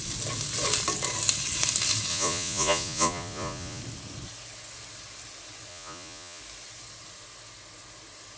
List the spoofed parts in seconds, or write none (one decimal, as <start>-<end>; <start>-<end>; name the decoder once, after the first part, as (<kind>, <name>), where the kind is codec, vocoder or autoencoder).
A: 2.1-3.8 (vocoder, Vocos); 5.7-6.4